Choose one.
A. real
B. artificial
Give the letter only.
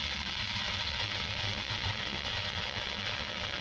B